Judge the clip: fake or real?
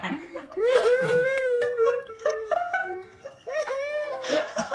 fake